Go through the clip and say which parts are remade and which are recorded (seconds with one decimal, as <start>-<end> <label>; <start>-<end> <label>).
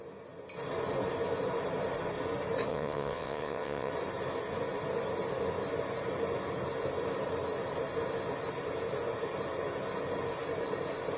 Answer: 0.0-2.7 recorded; 2.7-3.9 remade; 3.9-11.2 recorded